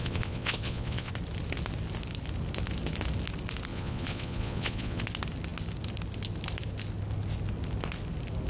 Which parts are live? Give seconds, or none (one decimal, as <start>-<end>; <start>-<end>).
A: 1.1-3.7; 5.0-8.5